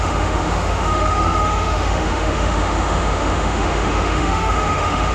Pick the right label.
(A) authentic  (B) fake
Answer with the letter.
B